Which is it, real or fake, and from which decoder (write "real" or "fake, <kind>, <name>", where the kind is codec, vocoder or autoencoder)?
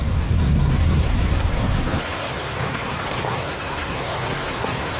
fake, codec, SNAC